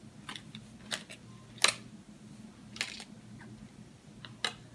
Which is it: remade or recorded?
recorded